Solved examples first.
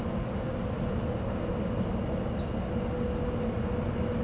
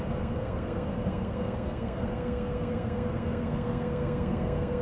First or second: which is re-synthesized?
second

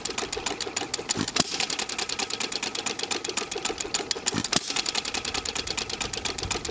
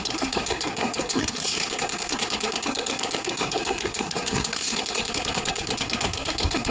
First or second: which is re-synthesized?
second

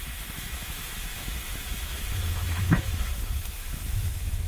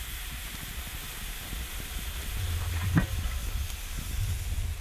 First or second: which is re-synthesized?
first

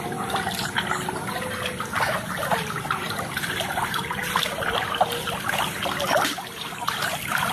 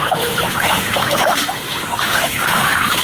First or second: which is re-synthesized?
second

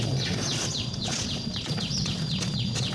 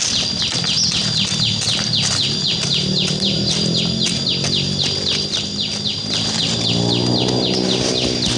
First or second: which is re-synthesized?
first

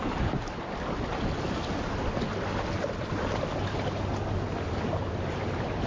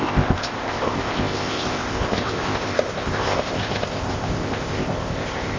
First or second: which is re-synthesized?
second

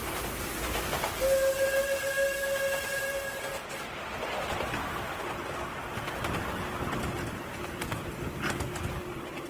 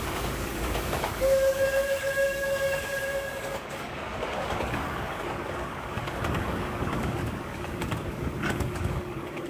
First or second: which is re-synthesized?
second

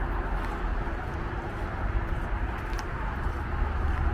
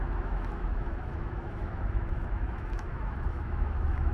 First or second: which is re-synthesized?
second